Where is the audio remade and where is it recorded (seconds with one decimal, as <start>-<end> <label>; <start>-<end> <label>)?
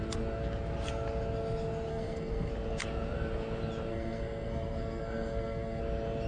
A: 0.0-1.9 recorded; 1.9-2.5 remade; 2.5-3.9 recorded; 3.9-5.8 remade; 5.8-6.3 recorded